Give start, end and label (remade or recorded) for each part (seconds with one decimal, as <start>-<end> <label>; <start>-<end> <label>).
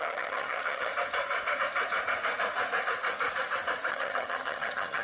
0.0-0.9 remade; 0.9-3.9 recorded; 3.9-5.0 remade